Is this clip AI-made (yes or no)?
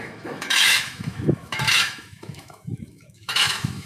yes